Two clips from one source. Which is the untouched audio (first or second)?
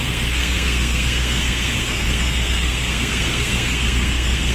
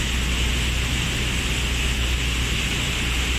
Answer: second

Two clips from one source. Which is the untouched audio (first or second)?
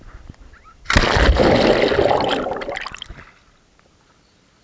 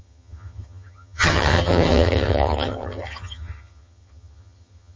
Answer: first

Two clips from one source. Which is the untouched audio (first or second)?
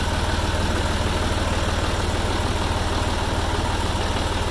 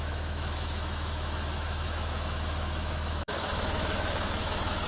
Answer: first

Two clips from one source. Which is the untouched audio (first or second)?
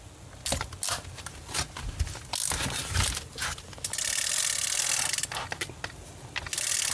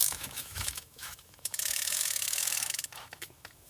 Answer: first